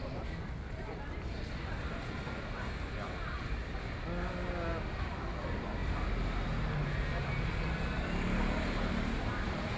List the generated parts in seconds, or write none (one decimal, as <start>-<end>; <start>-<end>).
none